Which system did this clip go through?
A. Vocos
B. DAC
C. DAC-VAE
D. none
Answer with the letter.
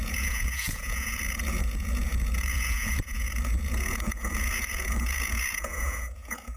A